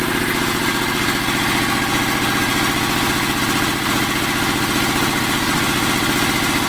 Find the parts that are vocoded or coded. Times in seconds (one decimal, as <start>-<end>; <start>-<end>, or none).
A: none